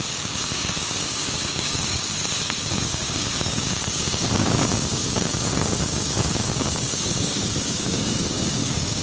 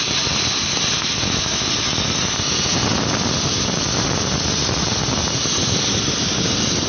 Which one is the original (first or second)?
second